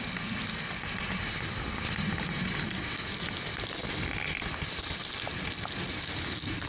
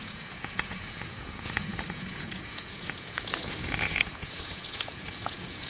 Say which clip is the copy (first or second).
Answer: second